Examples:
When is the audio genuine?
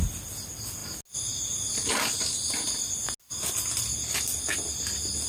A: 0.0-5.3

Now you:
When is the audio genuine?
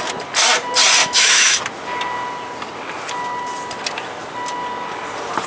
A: 0.0-1.0; 1.6-5.5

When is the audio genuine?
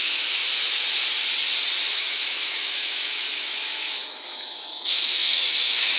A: 0.4-1.9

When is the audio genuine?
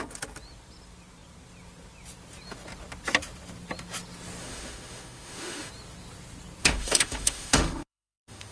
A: 0.0-4.4; 5.7-6.6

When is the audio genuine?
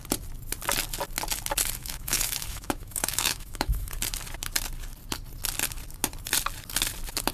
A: 0.0-1.8; 3.9-7.3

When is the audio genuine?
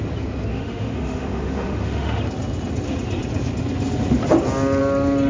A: 0.0-0.5; 2.2-5.3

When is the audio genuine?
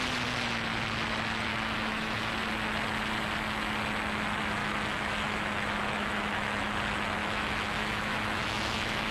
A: 0.0-1.5; 2.3-4.6; 6.7-7.2